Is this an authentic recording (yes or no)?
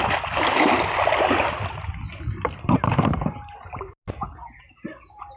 yes